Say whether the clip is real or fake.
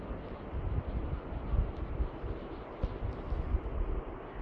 real